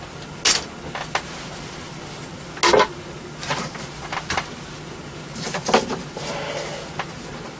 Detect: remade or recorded recorded